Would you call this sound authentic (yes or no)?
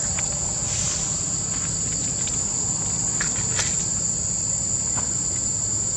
yes